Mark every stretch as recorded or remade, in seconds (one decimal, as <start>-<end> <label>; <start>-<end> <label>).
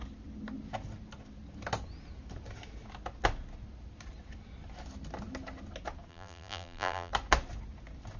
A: 0.0-6.1 recorded; 6.1-7.1 remade; 7.1-8.2 recorded